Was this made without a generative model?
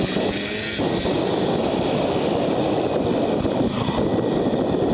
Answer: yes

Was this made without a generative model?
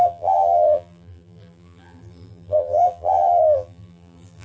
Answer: no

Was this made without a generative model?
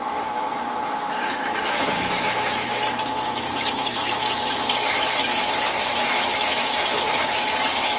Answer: no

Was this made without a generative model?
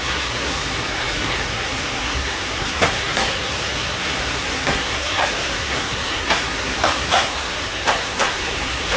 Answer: no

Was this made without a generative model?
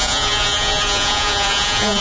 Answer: no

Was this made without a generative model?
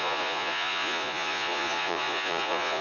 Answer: no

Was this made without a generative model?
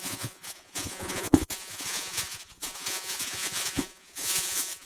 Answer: no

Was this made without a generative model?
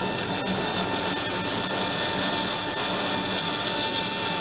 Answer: yes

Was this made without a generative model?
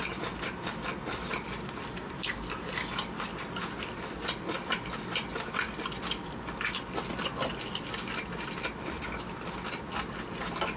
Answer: yes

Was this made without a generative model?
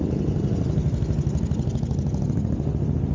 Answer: yes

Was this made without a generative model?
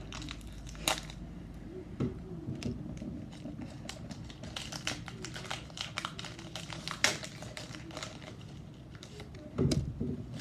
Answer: yes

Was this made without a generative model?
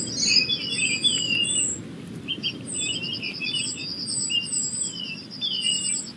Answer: yes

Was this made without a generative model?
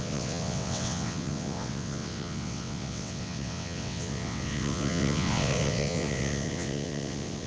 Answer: no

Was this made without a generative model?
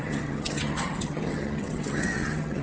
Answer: no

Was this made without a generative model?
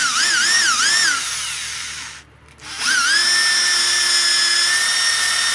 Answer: yes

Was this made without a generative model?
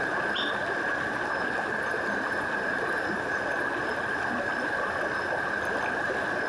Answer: yes